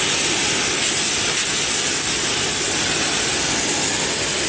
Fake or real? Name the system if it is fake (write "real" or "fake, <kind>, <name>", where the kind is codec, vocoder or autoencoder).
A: real